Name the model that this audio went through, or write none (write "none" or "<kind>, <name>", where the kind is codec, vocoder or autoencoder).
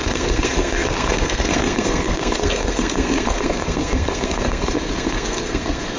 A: codec, SNAC